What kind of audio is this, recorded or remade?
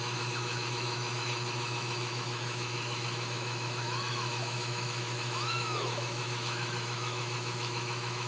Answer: remade